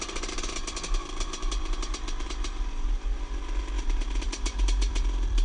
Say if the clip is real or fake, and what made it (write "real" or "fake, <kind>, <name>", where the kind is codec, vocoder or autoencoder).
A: fake, vocoder, BigVGAN v2